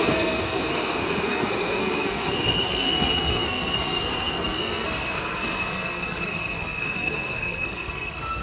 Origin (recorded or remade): remade